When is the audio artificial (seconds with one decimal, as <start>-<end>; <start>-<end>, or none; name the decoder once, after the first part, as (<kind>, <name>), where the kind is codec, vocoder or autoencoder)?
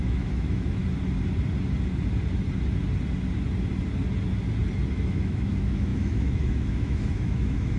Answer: 0.0-0.8 (autoencoder, DAC-VAE); 4.9-7.8